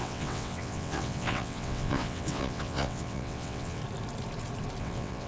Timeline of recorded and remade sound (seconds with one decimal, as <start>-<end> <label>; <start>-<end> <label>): 0.0-3.8 remade; 3.8-4.8 recorded; 4.8-5.3 remade

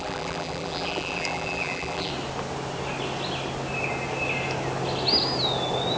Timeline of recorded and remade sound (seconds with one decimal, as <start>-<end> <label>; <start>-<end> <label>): 0.0-2.1 remade; 2.1-6.0 recorded